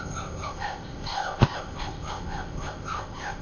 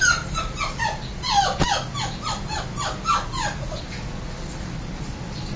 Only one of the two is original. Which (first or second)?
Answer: second